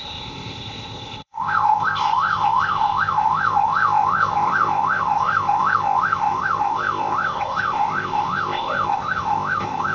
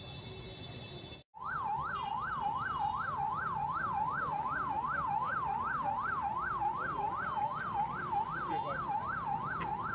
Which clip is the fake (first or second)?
first